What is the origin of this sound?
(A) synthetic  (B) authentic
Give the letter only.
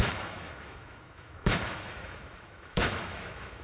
A